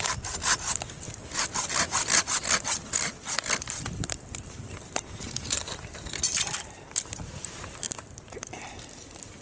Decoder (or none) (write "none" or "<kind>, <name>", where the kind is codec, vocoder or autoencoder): vocoder, BigVGAN v2